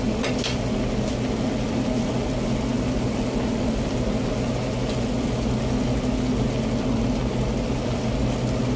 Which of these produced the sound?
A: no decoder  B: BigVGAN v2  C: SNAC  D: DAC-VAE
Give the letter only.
A